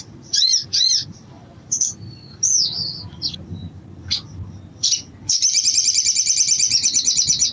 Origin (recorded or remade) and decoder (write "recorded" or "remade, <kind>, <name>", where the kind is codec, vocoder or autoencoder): remade, vocoder, BigVGAN v2